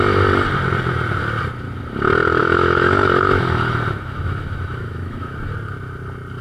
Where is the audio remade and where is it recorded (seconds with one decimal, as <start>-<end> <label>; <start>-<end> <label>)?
0.0-2.4 recorded; 2.4-5.5 remade; 5.5-6.4 recorded